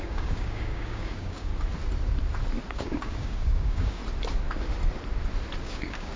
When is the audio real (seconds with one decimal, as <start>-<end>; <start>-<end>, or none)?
1.5-2.7; 4.0-5.6

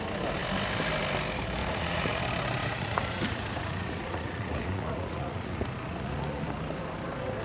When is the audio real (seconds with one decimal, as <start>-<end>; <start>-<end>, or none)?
0.0-1.6; 2.2-2.6; 6.4-7.4

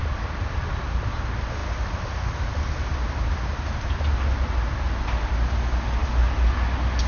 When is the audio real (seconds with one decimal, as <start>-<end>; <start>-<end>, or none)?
0.0-7.1

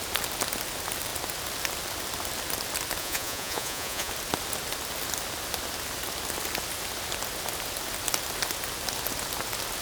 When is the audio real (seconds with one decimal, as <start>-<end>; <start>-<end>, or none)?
0.0-3.0; 4.1-9.8

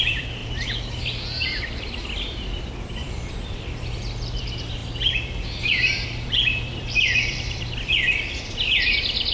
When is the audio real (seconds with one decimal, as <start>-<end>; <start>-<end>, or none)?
none

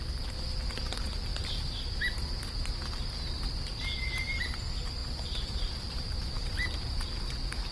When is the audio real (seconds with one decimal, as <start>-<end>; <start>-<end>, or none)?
0.0-5.0; 7.2-7.7

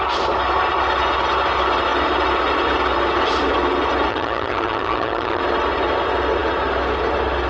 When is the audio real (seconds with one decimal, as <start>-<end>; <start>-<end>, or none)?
0.0-4.1; 5.4-7.5

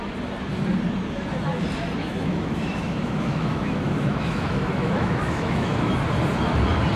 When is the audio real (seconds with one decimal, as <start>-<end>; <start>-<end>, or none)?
0.0-2.0; 6.0-7.0